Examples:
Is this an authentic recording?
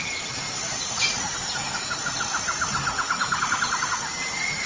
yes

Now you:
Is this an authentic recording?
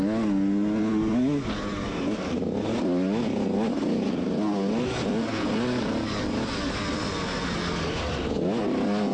yes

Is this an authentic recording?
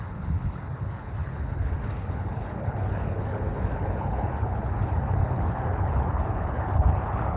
no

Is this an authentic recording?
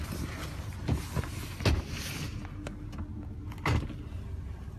yes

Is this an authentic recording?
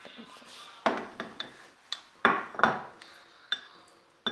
yes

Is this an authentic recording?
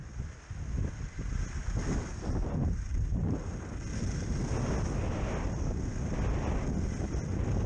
yes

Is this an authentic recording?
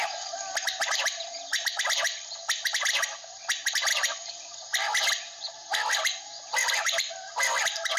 yes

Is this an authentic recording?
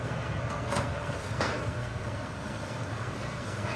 no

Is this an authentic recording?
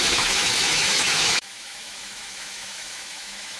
no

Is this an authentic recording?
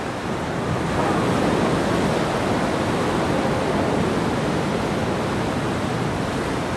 yes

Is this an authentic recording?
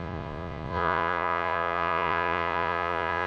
no